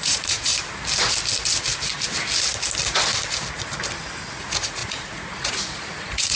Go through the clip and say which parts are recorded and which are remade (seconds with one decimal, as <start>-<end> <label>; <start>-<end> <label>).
0.0-0.5 remade; 0.5-4.3 recorded; 4.3-6.4 remade